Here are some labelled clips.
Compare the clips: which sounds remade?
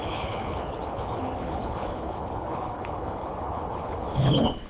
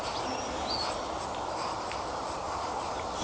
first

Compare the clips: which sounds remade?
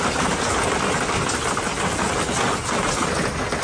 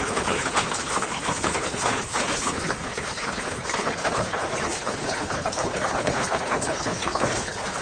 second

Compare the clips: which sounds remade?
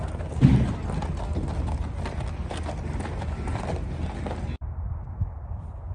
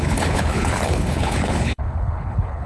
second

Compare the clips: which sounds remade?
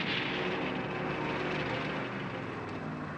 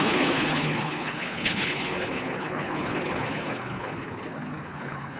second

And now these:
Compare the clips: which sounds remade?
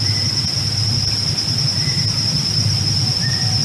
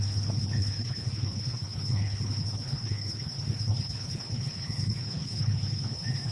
second